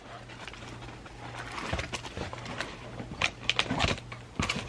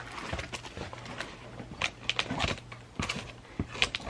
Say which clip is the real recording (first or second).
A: second